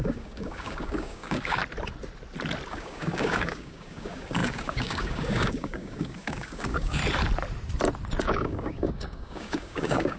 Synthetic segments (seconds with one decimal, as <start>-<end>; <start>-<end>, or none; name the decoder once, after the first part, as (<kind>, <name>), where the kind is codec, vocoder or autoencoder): 0.0-1.6 (codec, DAC); 2.7-7.0; 8.2-10.2